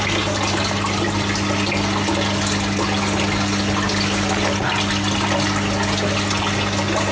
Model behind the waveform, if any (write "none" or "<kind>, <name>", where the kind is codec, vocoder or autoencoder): none